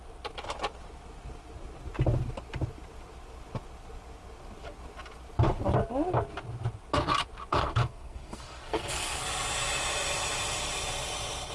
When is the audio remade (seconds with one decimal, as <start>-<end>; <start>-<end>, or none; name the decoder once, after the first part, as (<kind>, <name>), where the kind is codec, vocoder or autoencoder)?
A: 7.5-9.2 (codec, SNAC)